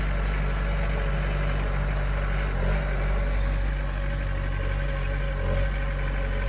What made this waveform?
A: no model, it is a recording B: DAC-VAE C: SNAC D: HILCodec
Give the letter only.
A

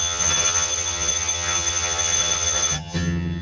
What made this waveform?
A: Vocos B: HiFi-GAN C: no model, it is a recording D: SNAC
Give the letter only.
B